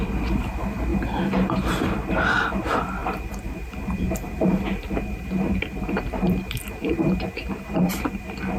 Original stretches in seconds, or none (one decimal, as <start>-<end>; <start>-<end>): 0.0-0.9; 1.9-3.0; 8.2-8.6